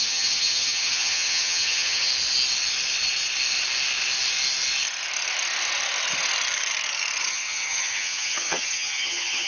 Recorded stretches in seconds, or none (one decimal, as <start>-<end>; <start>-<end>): 2.1-7.3